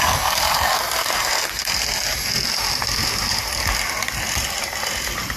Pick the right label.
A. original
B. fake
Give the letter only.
A